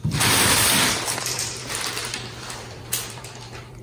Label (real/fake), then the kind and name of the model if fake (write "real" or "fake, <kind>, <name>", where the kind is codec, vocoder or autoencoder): fake, vocoder, BigVGAN v2